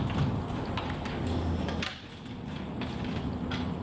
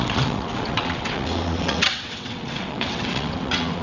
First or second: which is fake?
second